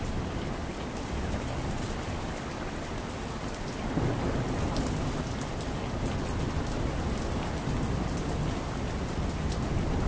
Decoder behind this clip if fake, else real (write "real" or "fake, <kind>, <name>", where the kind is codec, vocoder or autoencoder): real